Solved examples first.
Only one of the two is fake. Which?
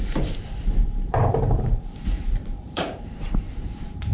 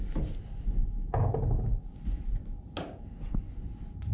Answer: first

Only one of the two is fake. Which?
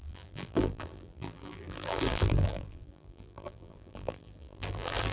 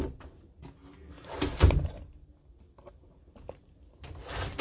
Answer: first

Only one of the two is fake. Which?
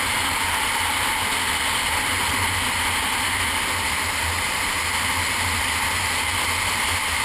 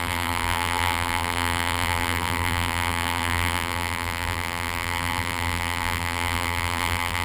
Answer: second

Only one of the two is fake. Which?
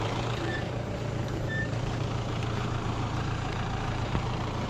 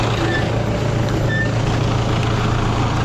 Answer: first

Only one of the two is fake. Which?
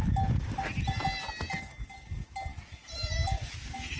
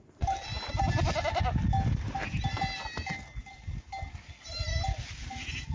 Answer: second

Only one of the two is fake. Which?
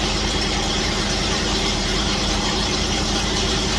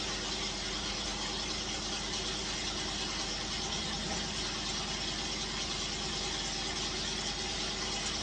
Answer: first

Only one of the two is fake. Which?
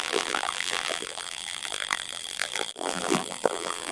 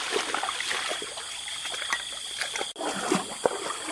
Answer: first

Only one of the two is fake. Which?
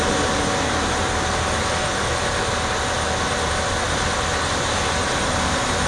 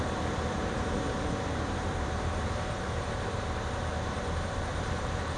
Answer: second